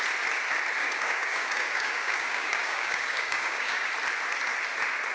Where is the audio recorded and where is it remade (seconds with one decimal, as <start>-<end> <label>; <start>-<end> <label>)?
0.0-0.8 recorded; 0.8-3.9 remade; 3.9-5.1 recorded